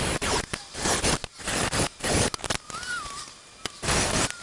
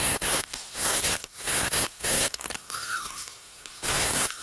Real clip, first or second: first